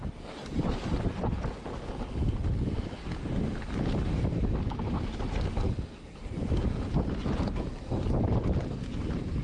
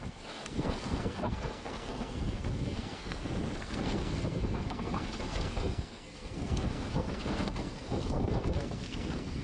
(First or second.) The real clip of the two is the first